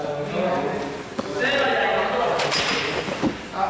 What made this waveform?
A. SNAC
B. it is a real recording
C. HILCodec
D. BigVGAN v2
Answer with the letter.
B